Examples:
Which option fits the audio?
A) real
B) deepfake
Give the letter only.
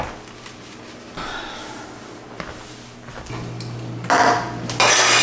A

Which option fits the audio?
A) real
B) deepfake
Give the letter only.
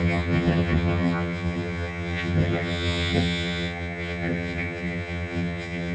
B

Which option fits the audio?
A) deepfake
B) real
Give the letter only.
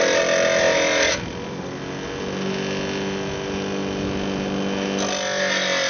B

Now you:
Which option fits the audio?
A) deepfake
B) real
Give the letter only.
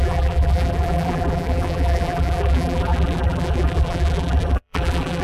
A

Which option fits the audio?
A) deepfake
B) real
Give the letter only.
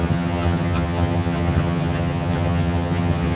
A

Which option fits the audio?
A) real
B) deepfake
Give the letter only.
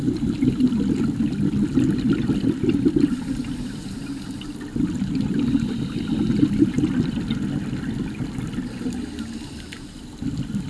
A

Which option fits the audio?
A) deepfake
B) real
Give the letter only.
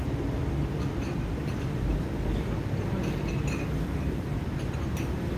B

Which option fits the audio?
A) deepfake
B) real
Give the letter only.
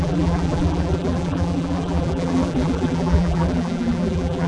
A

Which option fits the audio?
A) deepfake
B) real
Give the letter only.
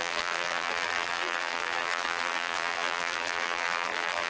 A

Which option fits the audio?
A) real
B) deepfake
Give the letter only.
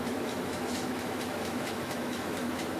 B